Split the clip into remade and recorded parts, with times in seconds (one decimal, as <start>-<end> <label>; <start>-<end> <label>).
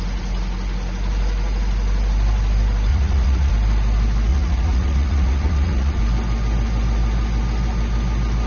0.0-2.9 recorded; 2.9-3.5 remade; 3.5-4.3 recorded; 4.3-6.0 remade; 6.0-8.5 recorded